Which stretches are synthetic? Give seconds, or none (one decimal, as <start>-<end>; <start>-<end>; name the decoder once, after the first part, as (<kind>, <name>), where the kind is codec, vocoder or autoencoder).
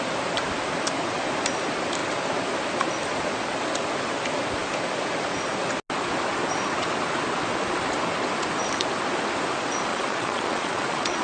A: 9.9-11.2 (vocoder, Vocos)